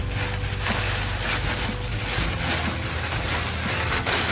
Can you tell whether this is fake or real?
real